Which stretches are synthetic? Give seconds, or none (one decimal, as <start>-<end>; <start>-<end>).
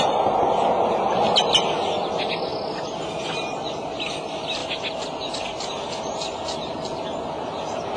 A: none